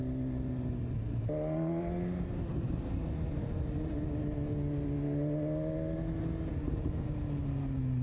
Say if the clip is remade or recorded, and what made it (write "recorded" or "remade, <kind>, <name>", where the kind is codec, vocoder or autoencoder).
recorded